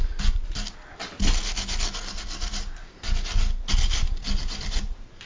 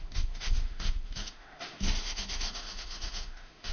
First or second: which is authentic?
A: first